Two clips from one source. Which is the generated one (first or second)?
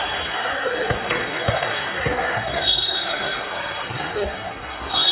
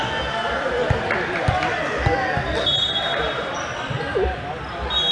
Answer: first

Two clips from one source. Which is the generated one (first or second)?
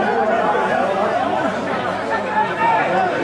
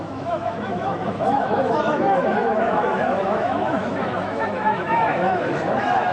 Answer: second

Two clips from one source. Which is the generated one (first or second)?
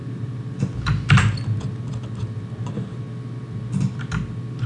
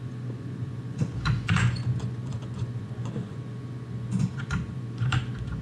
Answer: second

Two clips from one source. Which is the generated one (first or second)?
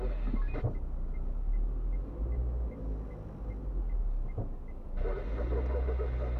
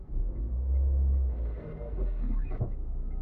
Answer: second